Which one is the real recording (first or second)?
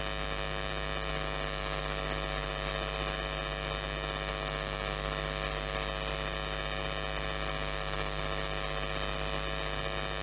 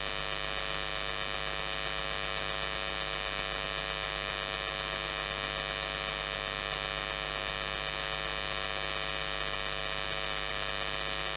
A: second